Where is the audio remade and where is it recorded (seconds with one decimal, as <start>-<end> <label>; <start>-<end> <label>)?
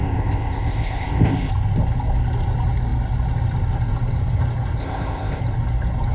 0.0-1.5 remade; 1.5-4.8 recorded; 4.8-5.4 remade; 5.4-6.1 recorded